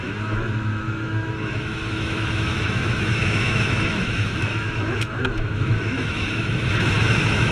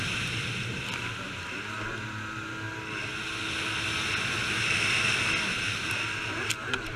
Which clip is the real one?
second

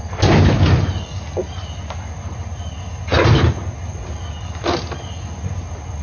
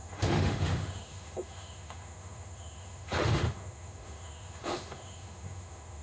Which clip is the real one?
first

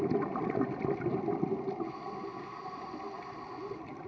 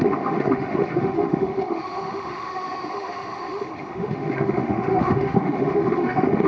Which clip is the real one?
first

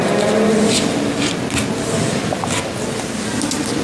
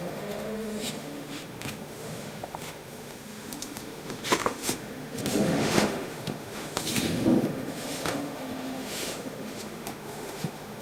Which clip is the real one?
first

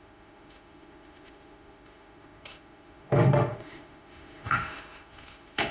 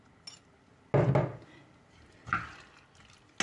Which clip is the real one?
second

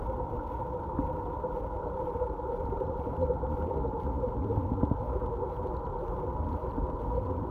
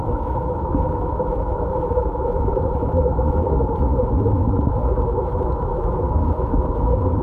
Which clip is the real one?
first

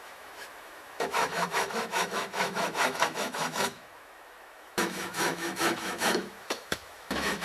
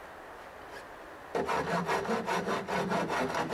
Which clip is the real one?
second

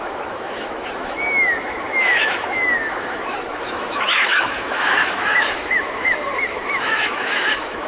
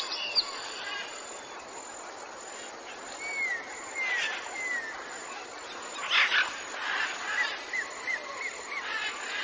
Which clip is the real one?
second